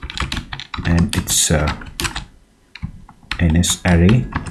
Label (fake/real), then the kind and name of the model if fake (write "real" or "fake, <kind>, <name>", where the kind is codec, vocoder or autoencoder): real